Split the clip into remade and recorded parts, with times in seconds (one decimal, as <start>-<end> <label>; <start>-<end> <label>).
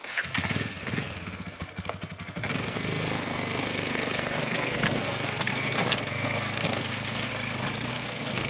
0.0-7.3 remade; 7.3-7.9 recorded; 7.9-8.5 remade